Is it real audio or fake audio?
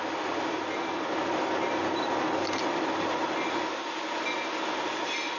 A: real